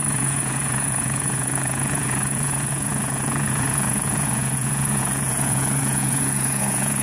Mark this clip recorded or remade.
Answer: remade